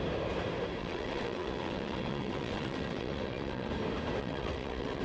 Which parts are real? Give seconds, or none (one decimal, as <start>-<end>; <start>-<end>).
0.0-0.8; 3.7-4.2